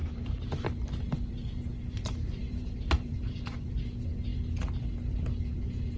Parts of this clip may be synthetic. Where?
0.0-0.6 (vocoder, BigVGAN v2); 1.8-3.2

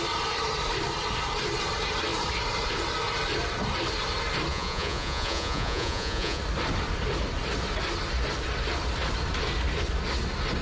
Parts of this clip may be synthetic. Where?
4.5-6.4 (vocoder, Vocos)

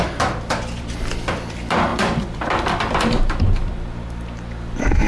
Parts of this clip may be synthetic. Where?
0.0-5.1 (vocoder, BigVGAN v2)